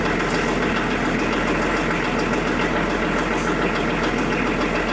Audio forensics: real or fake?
real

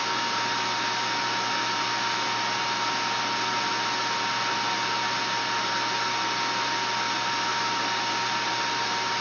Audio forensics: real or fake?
real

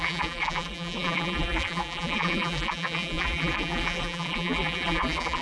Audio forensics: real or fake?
fake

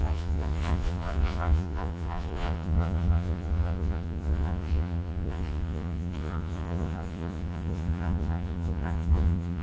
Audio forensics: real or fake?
fake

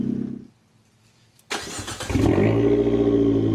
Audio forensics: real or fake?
real